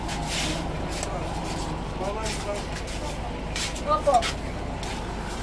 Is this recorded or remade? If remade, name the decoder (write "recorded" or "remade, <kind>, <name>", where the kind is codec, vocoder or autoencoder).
recorded